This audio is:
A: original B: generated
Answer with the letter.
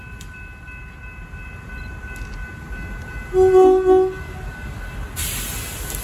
A